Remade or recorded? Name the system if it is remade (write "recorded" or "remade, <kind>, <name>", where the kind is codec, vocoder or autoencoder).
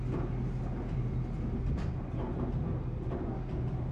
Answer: recorded